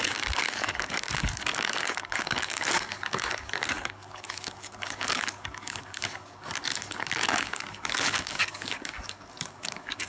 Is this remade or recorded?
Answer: remade